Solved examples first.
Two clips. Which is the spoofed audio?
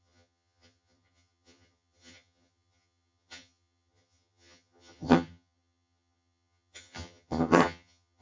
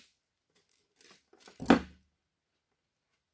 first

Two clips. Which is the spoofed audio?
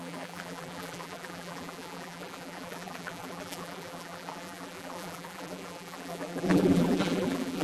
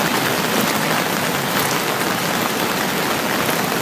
first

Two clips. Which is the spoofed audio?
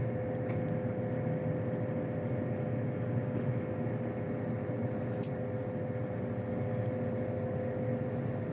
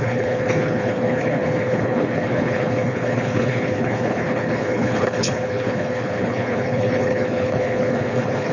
second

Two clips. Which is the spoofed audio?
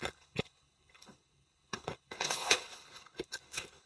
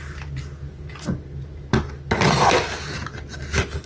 first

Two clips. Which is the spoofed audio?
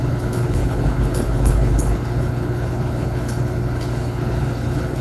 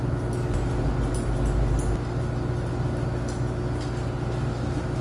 first